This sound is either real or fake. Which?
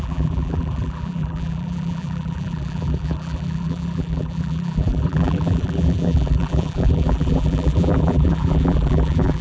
fake